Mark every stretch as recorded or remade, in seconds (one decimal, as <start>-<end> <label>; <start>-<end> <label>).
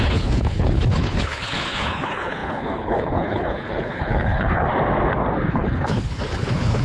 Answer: 0.0-4.7 remade; 4.7-5.5 recorded; 5.5-6.8 remade